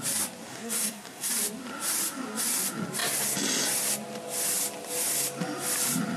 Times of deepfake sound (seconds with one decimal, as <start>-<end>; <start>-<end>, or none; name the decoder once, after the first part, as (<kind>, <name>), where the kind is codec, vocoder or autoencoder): 0.5-1.3 (codec, SNAC)